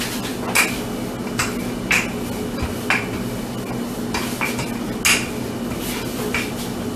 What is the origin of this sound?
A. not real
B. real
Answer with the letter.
B